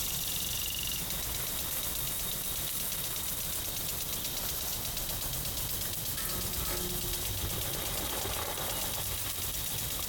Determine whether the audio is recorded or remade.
recorded